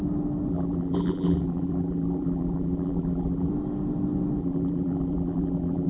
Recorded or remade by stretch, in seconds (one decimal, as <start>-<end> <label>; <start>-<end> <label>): 0.0-0.5 recorded; 0.5-3.5 remade; 3.5-4.4 recorded; 4.4-5.9 remade